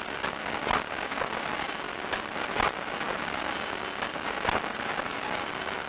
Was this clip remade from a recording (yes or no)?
no